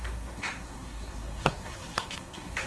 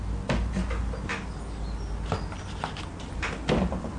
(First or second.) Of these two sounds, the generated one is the first